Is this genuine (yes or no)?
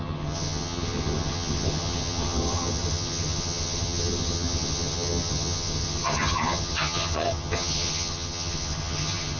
no